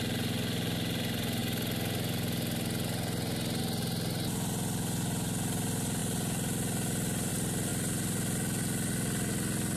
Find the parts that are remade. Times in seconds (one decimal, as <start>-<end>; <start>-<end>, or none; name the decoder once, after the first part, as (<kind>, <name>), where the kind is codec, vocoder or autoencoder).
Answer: none